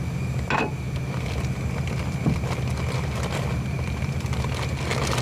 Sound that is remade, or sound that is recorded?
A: recorded